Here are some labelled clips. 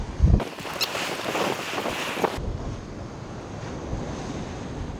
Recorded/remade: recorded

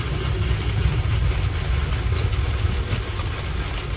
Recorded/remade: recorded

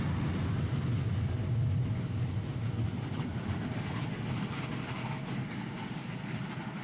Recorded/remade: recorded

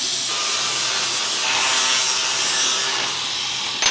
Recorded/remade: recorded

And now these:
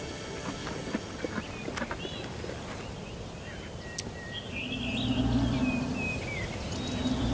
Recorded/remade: recorded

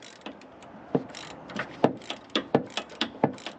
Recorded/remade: remade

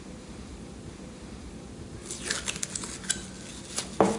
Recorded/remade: recorded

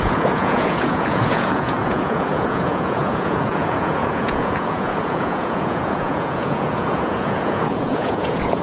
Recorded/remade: remade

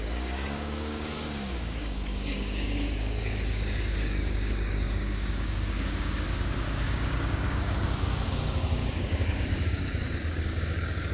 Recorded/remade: remade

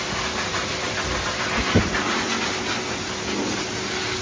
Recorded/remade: recorded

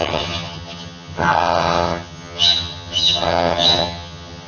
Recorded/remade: remade